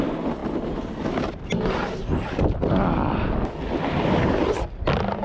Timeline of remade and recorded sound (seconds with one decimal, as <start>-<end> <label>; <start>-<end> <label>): 0.0-5.2 recorded